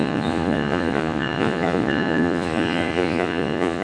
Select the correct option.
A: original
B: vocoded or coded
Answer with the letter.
B